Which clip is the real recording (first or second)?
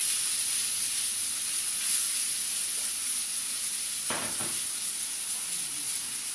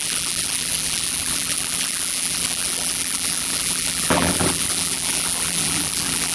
first